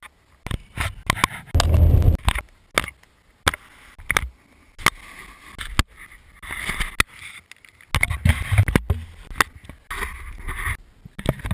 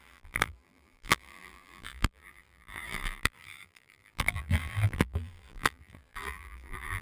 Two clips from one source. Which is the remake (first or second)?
second